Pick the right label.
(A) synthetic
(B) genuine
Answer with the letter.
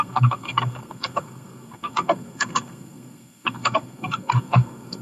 A